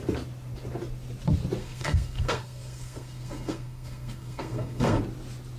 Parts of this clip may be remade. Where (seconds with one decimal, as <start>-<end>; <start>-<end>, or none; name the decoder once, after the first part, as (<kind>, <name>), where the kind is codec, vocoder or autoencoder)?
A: 1.6-5.0 (codec, SNAC)